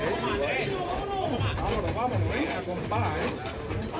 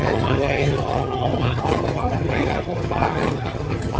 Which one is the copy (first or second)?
second